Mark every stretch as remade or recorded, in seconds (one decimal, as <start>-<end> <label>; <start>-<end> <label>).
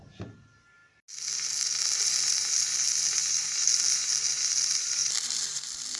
0.0-0.8 remade; 0.8-4.1 recorded; 4.1-6.0 remade